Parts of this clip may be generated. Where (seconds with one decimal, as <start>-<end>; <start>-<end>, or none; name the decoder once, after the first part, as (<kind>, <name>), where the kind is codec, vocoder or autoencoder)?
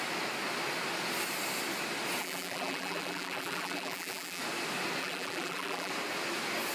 2.2-4.4 (vocoder, BigVGAN v2); 5.0-5.9